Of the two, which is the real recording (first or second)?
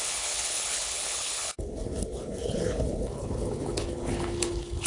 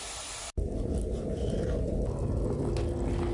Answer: second